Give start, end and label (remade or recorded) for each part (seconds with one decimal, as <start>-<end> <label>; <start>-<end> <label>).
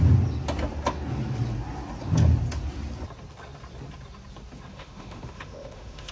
0.0-4.7 recorded; 4.7-6.1 remade